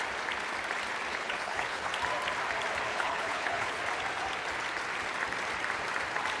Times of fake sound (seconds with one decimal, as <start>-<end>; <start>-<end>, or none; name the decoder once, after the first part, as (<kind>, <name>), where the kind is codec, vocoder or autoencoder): 1.1-1.9 (codec, HILCodec); 2.9-3.8